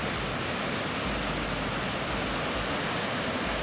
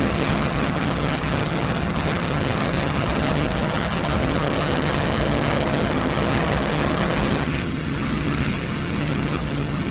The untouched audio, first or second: first